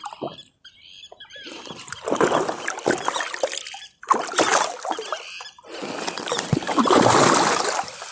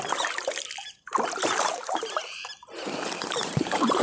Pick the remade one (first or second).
second